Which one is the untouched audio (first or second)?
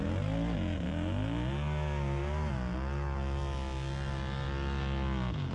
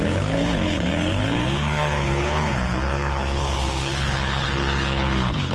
first